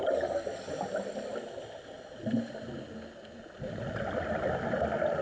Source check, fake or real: real